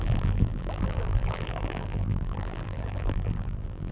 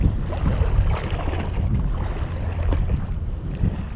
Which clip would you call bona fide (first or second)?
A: second